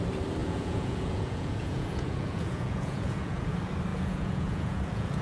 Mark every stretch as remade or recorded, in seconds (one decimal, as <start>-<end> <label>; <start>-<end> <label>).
0.0-0.4 recorded; 0.4-3.5 remade; 3.5-3.9 recorded; 3.9-5.2 remade